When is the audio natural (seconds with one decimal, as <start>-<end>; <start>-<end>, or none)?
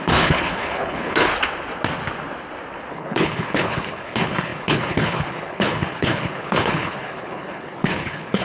1.3-2.9